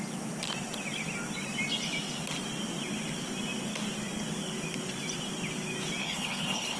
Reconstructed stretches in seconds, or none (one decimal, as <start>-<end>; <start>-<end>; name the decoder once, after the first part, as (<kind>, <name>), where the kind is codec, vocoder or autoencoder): 6.0-6.8 (codec, HILCodec)